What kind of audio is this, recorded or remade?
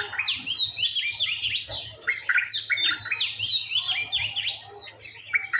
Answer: recorded